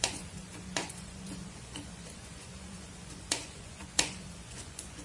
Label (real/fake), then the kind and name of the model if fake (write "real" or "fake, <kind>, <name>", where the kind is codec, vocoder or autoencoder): fake, vocoder, Vocos